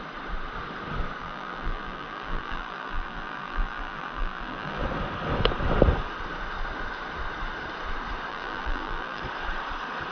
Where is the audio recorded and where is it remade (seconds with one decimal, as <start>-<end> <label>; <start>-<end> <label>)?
0.0-1.2 recorded; 1.2-4.8 remade; 4.8-8.3 recorded; 8.3-9.2 remade; 9.2-10.1 recorded